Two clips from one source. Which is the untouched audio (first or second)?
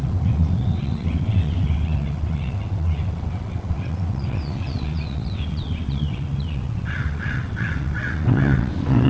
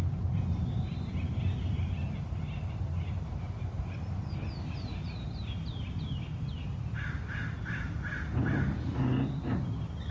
second